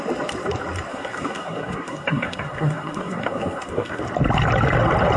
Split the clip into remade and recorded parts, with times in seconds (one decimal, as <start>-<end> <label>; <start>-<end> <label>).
0.0-0.9 recorded; 0.9-4.0 remade; 4.0-5.2 recorded